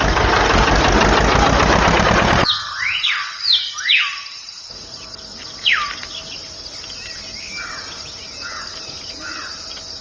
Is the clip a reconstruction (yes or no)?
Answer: no